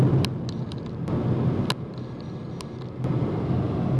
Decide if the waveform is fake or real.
real